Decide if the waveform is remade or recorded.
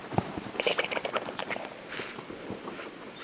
remade